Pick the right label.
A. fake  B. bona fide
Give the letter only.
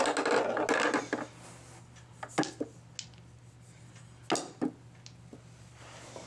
B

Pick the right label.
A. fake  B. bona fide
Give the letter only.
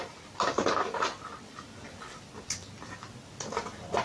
B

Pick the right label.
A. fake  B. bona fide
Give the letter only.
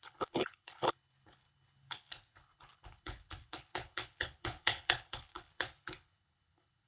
A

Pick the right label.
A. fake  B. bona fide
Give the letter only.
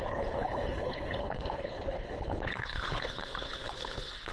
A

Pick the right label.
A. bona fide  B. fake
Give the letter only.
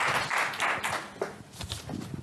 A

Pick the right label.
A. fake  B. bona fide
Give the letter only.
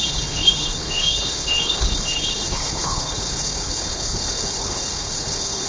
A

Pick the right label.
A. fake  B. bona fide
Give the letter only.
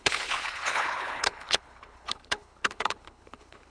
A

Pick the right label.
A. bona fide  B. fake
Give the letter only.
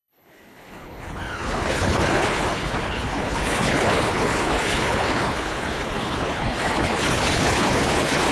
B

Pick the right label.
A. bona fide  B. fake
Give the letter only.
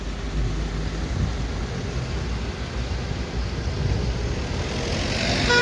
A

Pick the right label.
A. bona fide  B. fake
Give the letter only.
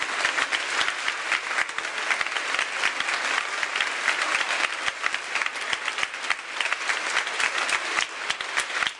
A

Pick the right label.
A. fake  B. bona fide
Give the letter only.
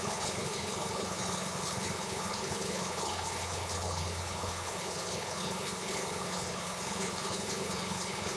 A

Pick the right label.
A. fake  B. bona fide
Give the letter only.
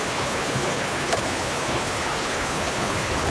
A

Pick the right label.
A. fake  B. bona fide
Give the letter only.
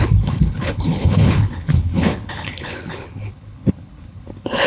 A